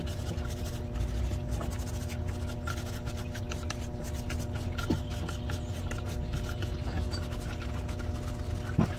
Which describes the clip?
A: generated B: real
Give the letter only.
B